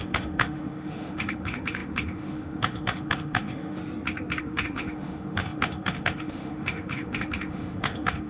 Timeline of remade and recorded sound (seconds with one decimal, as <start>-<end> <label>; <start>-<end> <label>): 0.0-3.8 remade; 3.8-4.4 recorded; 4.4-8.3 remade